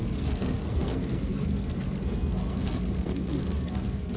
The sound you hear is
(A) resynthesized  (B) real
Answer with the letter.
A